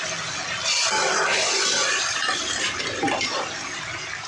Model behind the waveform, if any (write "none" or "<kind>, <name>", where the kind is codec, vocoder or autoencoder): none